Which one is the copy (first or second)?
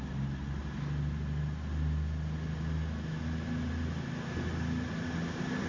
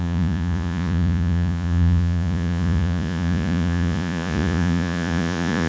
second